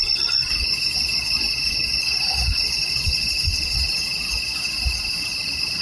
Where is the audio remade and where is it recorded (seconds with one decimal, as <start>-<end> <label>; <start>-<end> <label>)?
0.0-0.5 recorded; 0.5-5.8 remade